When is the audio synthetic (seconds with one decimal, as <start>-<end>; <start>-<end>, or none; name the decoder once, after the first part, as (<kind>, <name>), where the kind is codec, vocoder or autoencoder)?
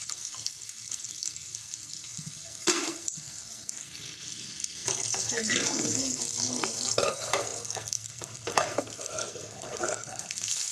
0.0-10.7 (codec, SNAC)